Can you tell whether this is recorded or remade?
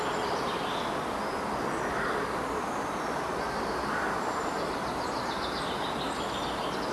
recorded